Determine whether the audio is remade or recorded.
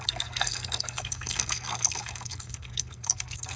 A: remade